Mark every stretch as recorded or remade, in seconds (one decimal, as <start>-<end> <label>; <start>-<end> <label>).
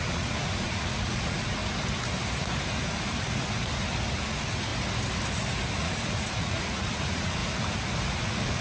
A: 0.0-1.6 remade; 1.6-4.3 recorded; 4.3-4.7 remade; 4.7-5.8 recorded; 5.8-7.4 remade; 7.4-8.2 recorded; 8.2-8.6 remade